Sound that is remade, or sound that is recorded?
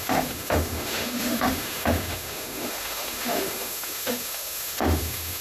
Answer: remade